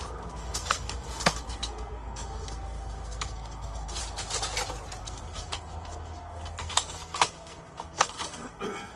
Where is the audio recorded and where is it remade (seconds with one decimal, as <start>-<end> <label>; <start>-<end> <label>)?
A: 0.0-4.0 remade; 4.0-5.0 recorded; 5.0-9.0 remade